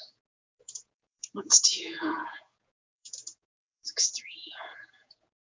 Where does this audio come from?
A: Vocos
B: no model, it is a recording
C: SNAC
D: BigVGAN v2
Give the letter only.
A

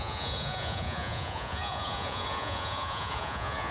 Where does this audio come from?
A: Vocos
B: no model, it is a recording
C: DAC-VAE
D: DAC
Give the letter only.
A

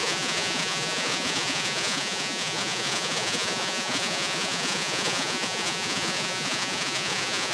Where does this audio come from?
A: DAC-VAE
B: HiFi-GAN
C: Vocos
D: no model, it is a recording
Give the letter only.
C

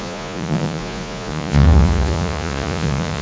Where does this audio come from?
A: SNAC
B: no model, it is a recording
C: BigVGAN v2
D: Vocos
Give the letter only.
D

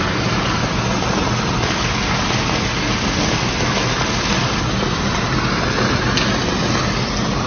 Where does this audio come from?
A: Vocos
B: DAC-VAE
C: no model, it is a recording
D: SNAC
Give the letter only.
C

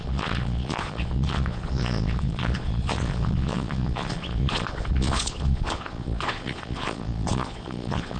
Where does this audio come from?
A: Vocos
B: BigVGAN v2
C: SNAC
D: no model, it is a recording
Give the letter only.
A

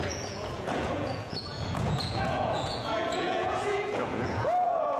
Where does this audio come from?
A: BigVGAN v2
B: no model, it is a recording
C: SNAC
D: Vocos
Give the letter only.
D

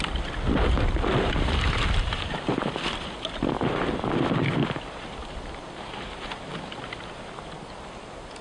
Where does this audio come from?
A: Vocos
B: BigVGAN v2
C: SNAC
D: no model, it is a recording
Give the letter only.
D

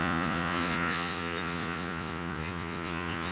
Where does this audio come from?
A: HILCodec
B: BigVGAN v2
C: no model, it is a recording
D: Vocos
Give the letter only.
D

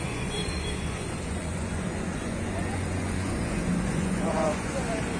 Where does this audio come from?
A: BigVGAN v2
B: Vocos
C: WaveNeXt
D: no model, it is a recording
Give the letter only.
B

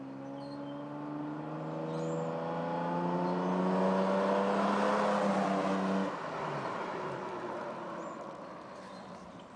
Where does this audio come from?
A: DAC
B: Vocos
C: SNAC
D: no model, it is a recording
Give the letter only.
D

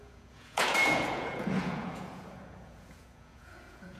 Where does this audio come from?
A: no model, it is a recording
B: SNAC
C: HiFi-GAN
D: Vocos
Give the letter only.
D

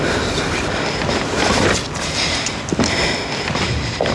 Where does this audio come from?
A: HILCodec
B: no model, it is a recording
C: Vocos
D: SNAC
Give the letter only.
B